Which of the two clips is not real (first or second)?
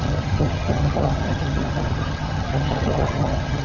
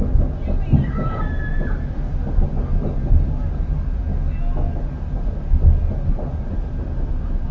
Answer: first